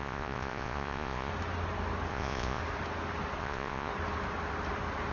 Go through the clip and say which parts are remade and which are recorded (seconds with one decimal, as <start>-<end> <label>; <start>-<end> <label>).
0.0-1.3 remade; 1.3-2.1 recorded; 2.1-2.6 remade; 2.6-3.4 recorded; 3.4-3.9 remade; 3.9-5.1 recorded

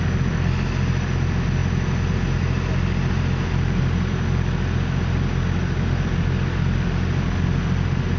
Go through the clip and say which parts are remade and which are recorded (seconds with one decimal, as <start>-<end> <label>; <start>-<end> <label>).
0.0-8.2 recorded

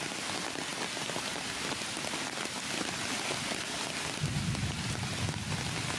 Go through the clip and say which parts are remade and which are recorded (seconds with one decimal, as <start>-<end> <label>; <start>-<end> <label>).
0.0-6.0 recorded